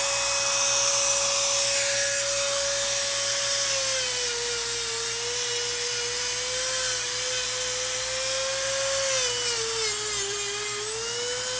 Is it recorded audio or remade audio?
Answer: recorded